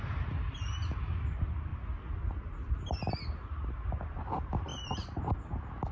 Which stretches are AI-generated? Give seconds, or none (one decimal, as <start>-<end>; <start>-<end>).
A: 4.7-5.2